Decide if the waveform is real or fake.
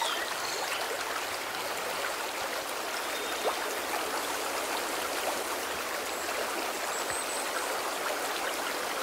real